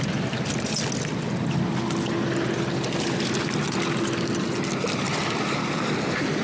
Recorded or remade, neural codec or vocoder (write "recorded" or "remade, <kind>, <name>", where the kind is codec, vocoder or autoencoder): recorded